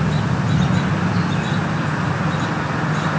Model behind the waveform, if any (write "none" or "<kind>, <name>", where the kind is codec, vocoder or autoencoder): none